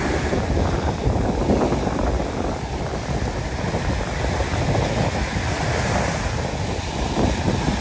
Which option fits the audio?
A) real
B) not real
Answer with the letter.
A